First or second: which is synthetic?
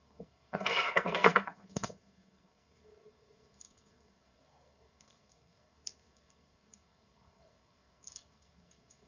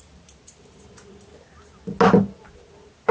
first